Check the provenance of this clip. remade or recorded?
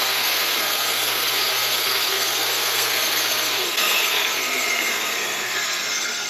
remade